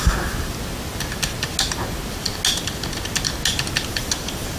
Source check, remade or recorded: recorded